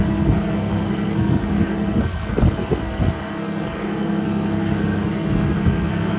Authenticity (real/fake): fake